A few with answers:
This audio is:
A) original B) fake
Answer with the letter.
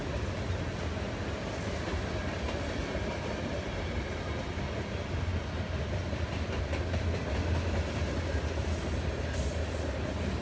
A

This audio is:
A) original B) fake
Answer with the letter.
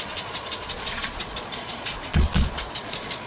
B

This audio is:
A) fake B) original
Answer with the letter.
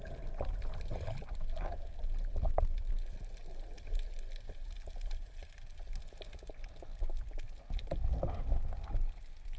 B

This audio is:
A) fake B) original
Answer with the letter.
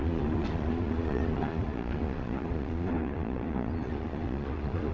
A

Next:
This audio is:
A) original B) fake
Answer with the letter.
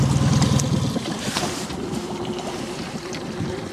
A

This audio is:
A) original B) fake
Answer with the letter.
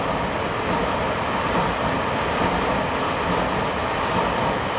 A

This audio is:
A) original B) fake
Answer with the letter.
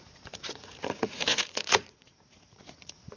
B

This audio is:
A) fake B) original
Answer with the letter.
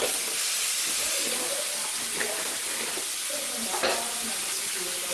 B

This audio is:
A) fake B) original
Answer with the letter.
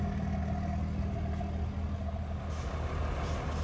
B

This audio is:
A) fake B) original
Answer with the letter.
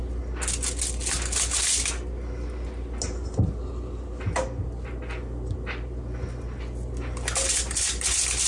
B